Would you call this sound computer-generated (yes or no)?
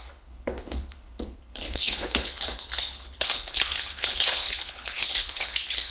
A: yes